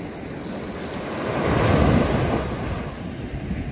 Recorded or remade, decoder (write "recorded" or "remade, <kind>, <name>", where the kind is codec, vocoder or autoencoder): recorded